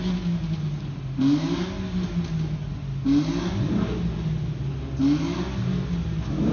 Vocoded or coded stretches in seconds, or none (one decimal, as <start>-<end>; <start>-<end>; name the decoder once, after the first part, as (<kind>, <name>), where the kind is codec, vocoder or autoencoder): none